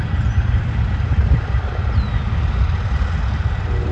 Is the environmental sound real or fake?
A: real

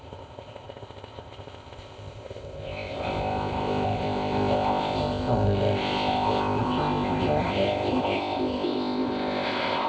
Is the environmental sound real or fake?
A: fake